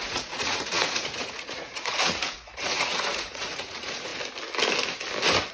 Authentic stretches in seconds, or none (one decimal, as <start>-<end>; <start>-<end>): 4.1-5.5